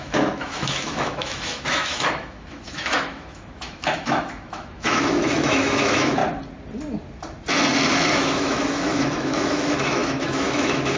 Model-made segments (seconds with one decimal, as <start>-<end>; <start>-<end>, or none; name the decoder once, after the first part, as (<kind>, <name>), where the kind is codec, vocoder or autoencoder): 0.0-6.2 (autoencoder, DAC-VAE); 8.1-11.0